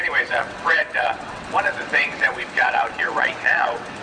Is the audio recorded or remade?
remade